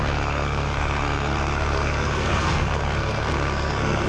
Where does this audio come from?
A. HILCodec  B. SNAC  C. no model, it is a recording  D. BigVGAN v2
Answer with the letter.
B